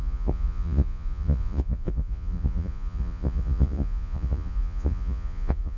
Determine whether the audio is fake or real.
fake